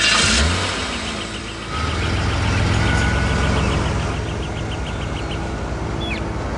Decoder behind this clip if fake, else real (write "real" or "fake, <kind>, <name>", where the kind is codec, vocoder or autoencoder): real